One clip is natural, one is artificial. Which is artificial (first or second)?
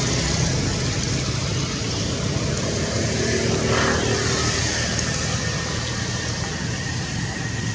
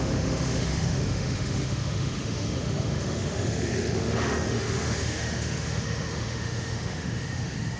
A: second